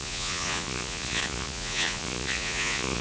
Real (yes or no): no